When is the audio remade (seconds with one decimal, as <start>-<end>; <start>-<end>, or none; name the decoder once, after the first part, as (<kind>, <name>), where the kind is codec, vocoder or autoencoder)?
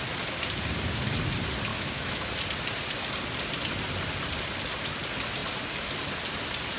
1.7-2.3 (autoencoder, DAC-VAE)